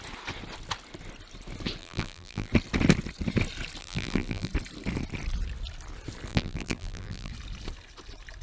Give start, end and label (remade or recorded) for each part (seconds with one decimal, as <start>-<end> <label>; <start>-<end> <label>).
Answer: 0.0-1.8 recorded; 1.8-2.5 remade; 2.5-3.8 recorded; 3.8-4.5 remade; 4.5-6.3 recorded; 6.3-7.3 remade; 7.3-8.4 recorded